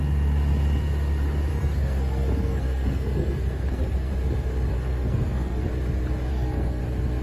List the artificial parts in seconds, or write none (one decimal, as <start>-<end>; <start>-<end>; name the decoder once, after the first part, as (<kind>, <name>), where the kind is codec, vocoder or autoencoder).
1.5-4.1 (codec, SNAC); 4.7-5.7; 6.3-6.8